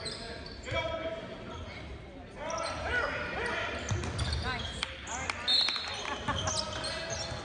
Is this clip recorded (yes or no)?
yes